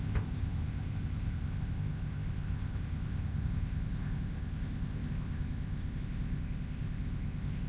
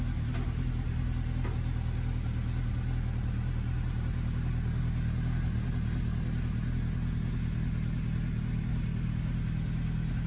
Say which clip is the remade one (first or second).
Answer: first